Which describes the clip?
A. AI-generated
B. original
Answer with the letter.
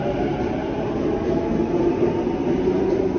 B